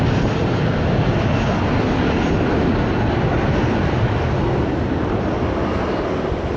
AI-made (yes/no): no